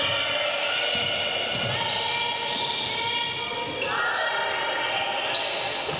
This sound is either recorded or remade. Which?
recorded